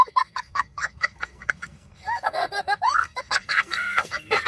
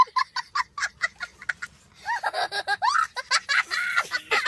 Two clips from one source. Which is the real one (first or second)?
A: second